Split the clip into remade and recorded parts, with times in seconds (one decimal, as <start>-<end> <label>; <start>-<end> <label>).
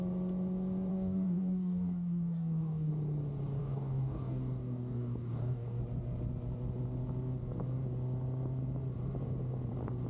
0.0-0.9 recorded; 0.9-2.9 remade; 2.9-3.6 recorded; 3.6-5.8 remade; 5.8-10.1 recorded